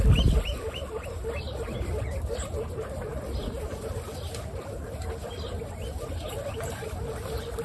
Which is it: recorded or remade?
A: recorded